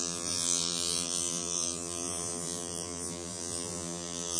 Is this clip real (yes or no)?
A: no